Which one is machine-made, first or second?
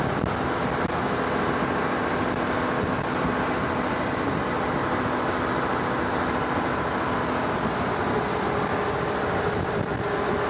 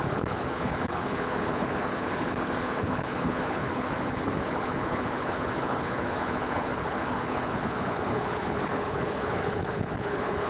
second